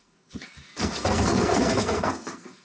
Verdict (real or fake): fake